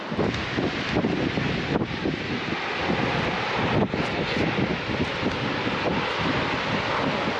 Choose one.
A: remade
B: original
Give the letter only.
B